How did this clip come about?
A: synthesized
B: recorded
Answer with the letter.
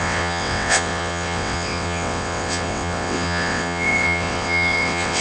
A